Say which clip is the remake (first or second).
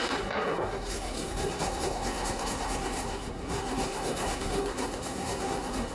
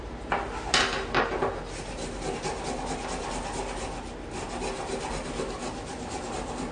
first